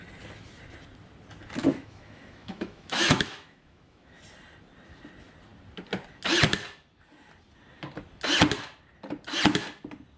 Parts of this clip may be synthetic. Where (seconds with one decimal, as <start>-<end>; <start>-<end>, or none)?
1.6-4.2